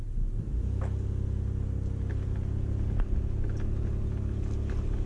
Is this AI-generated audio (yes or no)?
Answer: no